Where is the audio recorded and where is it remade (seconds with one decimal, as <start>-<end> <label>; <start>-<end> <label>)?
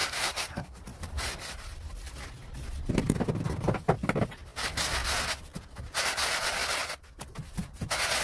0.0-0.8 remade; 0.8-8.2 recorded